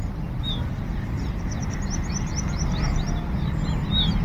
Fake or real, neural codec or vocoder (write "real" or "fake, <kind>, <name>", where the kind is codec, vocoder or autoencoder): real